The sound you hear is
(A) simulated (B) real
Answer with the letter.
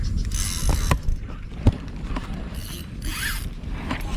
B